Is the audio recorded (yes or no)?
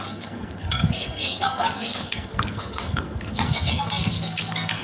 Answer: no